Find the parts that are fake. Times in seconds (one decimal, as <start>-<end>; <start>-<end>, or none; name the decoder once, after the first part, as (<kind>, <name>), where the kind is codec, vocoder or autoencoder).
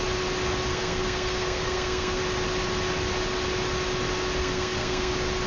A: 0.7-2.2 (codec, SNAC); 4.4-5.1